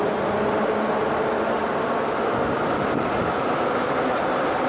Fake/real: real